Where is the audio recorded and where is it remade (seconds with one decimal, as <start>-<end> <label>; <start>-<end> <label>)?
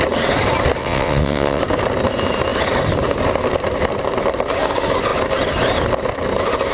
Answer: 0.0-0.8 recorded; 0.8-1.6 remade; 1.6-6.7 recorded